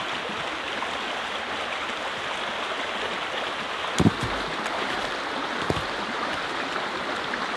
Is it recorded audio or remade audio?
recorded